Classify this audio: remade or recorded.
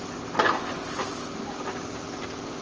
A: recorded